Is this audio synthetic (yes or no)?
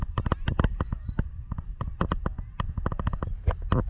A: no